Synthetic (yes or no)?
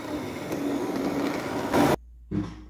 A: no